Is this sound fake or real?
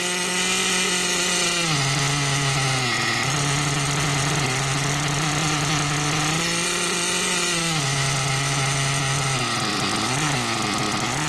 real